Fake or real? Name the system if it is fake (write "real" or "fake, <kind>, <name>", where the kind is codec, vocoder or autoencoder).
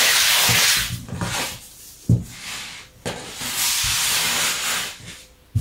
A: real